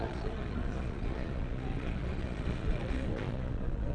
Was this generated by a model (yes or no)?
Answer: yes